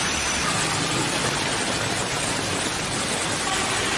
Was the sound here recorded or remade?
recorded